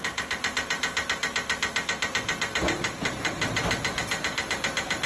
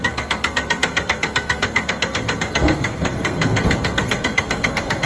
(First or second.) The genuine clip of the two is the first